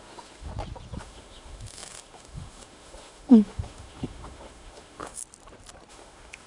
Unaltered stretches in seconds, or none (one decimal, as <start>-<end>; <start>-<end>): 0.5-1.0; 5.2-5.9